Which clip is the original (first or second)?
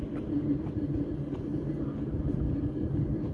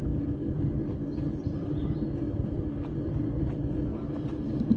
second